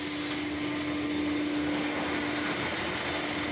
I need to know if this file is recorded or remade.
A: recorded